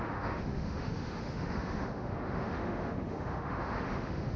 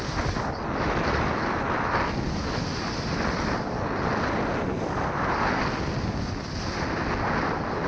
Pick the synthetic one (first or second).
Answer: first